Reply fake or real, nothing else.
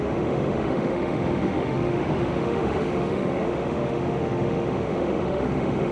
fake